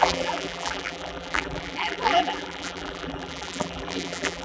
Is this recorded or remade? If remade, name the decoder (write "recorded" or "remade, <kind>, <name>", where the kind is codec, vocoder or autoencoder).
remade, vocoder, BigVGAN v2